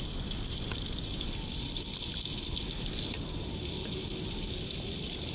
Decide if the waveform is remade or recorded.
recorded